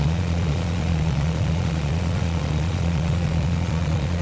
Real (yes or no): no